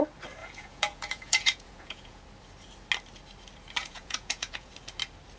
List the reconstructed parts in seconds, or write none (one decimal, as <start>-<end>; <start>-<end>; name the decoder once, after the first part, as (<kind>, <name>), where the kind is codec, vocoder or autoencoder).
0.4-2.2 (vocoder, Vocos); 3.8-4.7